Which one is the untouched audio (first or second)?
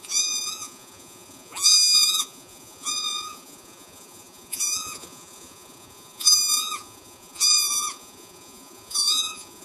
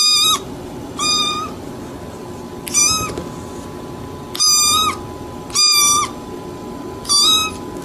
second